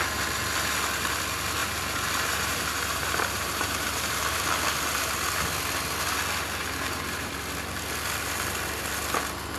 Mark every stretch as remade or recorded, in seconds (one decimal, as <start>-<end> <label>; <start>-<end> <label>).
0.0-1.6 recorded; 1.6-4.2 remade; 4.2-6.6 recorded; 6.6-7.3 remade; 7.3-9.6 recorded